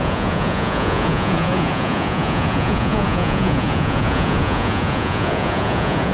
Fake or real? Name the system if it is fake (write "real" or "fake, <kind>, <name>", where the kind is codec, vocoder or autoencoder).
fake, vocoder, Vocos